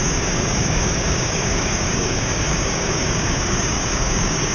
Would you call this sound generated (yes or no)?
yes